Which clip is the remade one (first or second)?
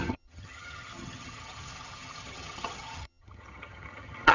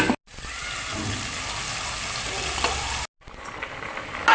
first